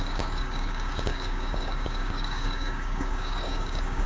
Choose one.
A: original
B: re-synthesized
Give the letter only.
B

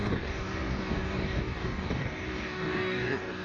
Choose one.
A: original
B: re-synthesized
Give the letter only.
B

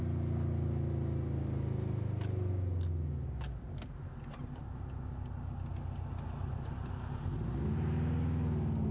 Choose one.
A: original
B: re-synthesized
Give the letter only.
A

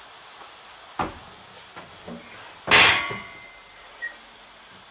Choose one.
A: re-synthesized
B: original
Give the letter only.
B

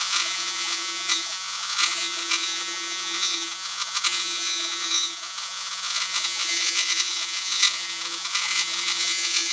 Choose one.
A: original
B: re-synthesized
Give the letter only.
B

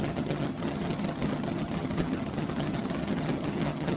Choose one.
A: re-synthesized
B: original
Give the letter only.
A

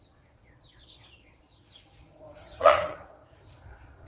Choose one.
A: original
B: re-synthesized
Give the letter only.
B